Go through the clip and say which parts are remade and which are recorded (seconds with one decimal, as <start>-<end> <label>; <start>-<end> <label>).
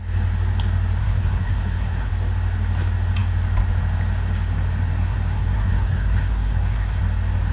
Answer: 0.0-1.0 recorded; 1.0-2.1 remade; 2.1-4.9 recorded; 4.9-7.0 remade; 7.0-7.5 recorded